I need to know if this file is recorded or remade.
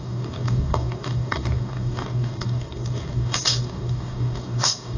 remade